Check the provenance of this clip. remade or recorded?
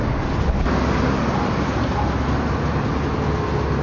recorded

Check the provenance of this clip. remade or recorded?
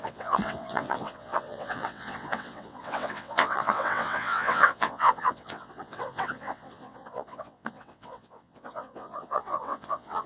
remade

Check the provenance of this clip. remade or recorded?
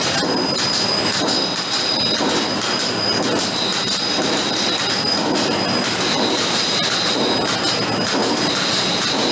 recorded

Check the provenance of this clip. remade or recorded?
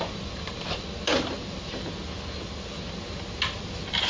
recorded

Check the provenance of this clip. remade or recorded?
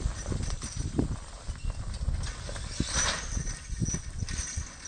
recorded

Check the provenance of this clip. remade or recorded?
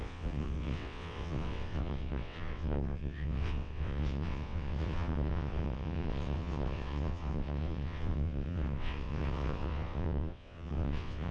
remade